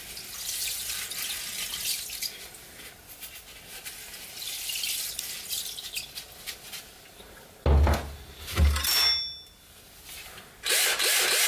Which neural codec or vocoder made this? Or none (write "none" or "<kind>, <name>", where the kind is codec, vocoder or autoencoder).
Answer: none